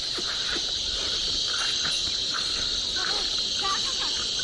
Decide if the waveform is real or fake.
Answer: real